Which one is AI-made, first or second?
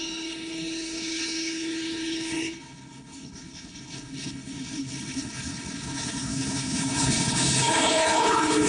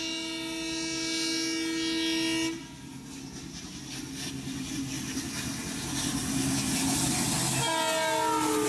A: first